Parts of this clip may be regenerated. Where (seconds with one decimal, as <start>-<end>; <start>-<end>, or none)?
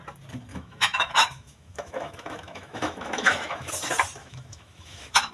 0.5-3.7; 4.2-5.3